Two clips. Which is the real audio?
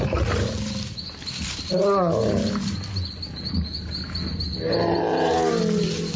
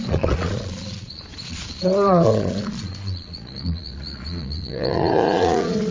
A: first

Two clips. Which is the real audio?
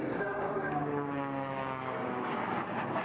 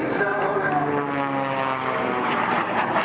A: second